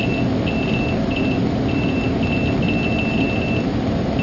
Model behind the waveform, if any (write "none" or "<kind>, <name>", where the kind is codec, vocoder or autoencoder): none